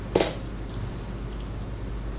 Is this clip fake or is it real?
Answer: real